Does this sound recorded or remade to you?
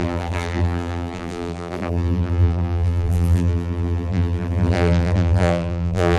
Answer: remade